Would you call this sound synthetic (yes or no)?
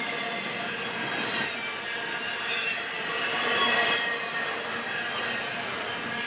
no